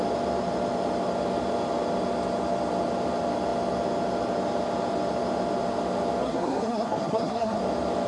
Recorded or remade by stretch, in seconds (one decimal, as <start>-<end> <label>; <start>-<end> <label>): 0.0-6.2 recorded; 6.2-7.6 remade; 7.6-8.1 recorded